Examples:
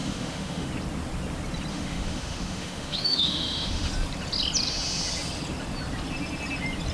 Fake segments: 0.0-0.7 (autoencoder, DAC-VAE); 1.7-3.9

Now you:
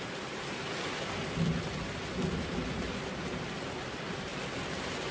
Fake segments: none

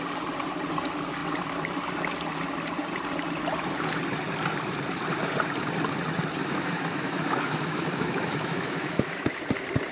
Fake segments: 6.4-9.4 (autoencoder, DAC-VAE)

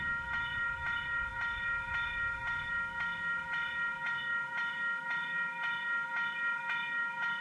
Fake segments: 0.0-7.4 (autoencoder, DAC-VAE)